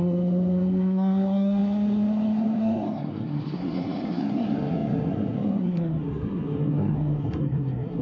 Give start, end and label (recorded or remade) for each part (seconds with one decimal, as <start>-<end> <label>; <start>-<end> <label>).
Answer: 0.0-8.0 remade